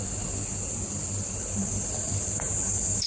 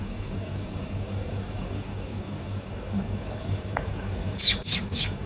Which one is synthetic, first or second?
second